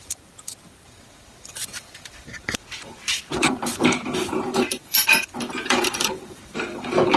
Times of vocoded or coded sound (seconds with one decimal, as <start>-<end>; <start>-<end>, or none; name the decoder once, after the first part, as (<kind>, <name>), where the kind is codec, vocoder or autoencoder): 0.0-7.2 (vocoder, BigVGAN v2)